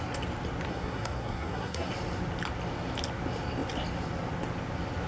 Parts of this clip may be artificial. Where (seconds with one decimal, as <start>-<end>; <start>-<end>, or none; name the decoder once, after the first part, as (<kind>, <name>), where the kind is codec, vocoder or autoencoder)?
0.7-1.9 (codec, SNAC)